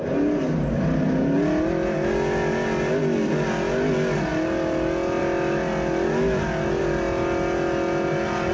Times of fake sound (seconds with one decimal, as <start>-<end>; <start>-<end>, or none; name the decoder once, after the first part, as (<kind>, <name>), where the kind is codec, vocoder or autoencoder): none